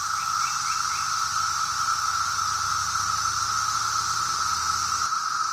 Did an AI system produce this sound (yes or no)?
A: no